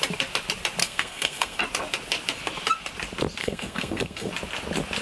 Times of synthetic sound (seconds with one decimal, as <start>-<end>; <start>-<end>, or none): 0.8-1.6; 3.4-4.3